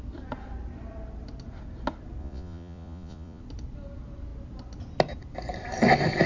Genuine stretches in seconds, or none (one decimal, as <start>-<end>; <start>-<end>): 0.0-2.2; 3.4-6.3